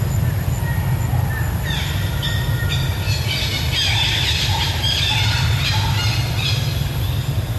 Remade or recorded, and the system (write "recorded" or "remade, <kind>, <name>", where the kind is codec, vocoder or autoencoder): recorded